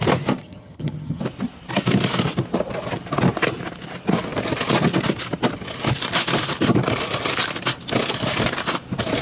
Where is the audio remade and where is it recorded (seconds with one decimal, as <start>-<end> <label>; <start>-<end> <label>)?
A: 0.0-0.4 recorded; 0.4-1.2 remade; 1.2-9.2 recorded